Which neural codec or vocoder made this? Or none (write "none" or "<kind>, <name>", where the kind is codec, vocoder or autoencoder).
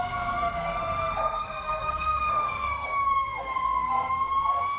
codec, SNAC